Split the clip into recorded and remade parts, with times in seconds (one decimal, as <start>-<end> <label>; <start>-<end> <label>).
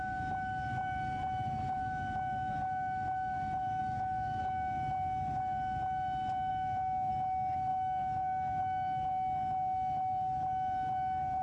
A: 0.0-3.8 recorded; 3.8-4.4 remade; 4.4-6.5 recorded; 6.5-7.1 remade; 7.1-7.7 recorded; 7.7-8.6 remade; 8.6-11.4 recorded